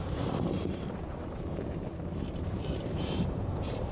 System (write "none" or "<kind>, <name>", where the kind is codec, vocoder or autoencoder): vocoder, BigVGAN v2